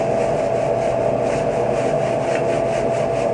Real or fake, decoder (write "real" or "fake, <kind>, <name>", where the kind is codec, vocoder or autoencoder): real